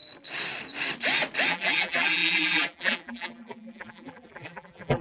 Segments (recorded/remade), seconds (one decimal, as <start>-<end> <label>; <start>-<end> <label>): 0.0-1.5 recorded; 1.5-5.0 remade